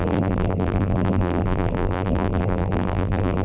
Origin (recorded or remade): remade